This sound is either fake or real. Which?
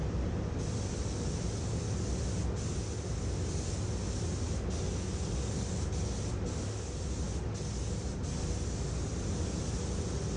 real